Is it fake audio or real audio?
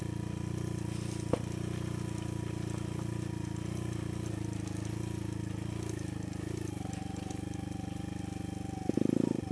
real